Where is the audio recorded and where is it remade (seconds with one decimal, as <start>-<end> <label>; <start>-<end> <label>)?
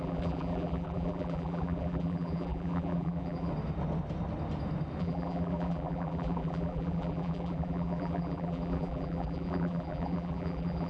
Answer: 0.0-3.5 remade; 3.5-5.0 recorded; 5.0-10.9 remade